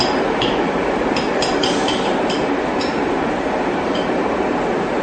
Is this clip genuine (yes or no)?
no